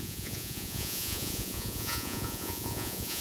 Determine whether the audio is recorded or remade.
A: remade